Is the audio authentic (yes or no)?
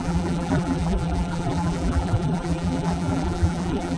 no